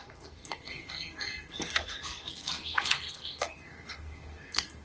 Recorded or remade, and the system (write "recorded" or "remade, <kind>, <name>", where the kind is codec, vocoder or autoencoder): remade, codec, SNAC